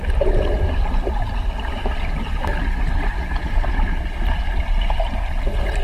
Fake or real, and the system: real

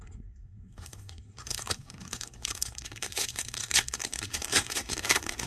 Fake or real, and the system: fake, codec, SNAC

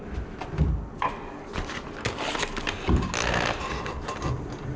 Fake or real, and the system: real